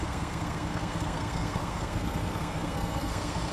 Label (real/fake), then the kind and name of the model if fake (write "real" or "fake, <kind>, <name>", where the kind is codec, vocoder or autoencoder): fake, codec, SNAC